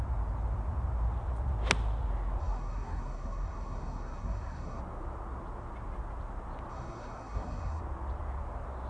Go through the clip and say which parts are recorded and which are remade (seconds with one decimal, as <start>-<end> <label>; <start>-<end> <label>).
0.0-2.4 recorded; 2.4-4.8 remade; 4.8-6.7 recorded; 6.7-7.8 remade; 7.8-8.9 recorded